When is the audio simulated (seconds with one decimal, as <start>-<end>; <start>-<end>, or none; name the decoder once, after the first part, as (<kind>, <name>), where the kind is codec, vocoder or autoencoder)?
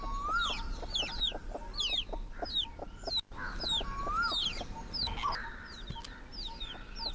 none